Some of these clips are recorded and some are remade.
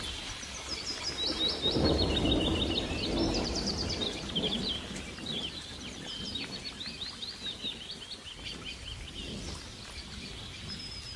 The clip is recorded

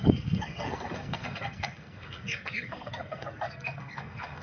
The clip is remade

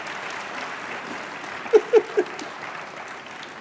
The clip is recorded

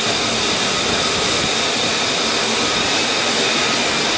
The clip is recorded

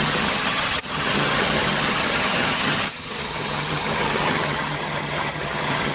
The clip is remade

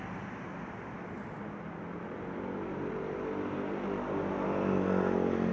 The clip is recorded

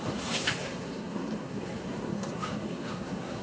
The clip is remade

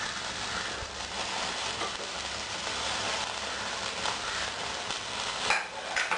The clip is recorded